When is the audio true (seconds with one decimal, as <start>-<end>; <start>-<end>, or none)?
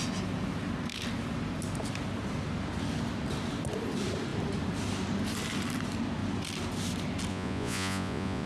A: 0.0-7.3